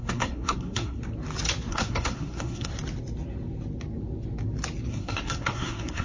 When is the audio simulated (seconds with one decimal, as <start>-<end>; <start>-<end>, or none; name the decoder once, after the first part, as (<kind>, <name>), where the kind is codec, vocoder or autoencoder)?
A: 0.0-1.0 (codec, SNAC); 1.7-2.7; 4.9-6.0